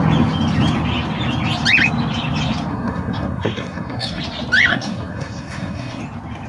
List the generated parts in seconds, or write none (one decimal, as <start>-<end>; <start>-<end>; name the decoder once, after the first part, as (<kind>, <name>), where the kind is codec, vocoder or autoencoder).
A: 2.7-4.2 (codec, SNAC); 4.7-6.0